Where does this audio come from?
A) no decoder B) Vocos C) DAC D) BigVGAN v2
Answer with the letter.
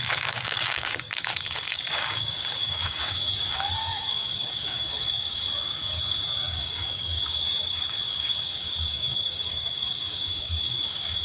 C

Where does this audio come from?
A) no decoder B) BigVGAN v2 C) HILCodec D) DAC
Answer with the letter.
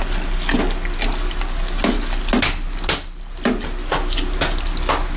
A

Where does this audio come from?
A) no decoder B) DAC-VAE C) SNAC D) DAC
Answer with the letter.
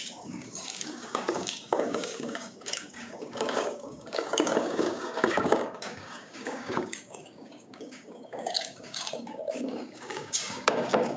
D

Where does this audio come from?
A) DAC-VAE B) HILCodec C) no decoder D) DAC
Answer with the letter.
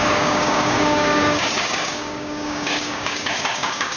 D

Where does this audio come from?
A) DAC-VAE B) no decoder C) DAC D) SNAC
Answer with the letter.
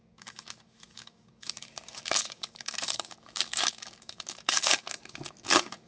C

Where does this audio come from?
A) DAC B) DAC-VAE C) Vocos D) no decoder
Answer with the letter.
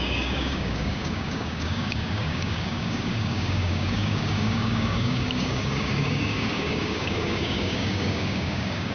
A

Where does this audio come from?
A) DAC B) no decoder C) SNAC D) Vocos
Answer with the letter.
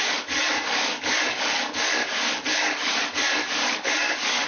A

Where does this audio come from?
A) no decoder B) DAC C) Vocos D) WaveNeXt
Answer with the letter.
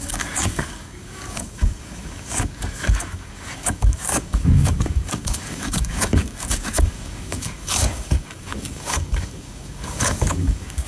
B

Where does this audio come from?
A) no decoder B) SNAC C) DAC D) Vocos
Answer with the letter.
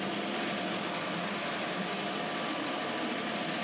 A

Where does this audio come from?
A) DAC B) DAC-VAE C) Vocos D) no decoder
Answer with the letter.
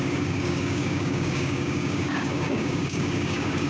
A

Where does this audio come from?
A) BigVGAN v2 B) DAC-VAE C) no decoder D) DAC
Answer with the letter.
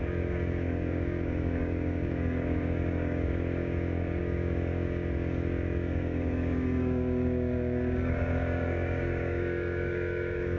D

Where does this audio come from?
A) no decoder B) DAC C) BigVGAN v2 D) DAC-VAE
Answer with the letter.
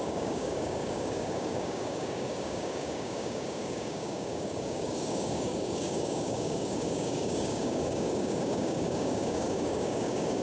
B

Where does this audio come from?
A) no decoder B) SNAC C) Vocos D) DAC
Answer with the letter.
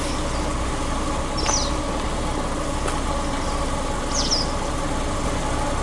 A